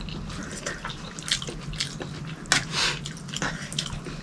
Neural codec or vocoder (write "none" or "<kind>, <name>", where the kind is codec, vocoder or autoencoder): none